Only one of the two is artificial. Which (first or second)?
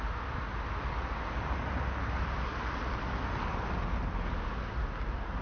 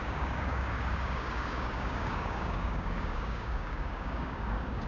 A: second